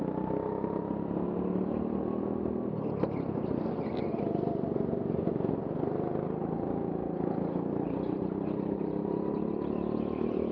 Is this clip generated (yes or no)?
no